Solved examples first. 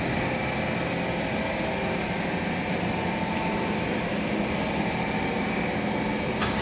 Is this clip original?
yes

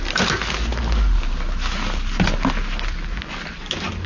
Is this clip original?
yes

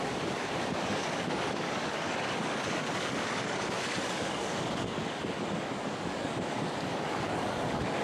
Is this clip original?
no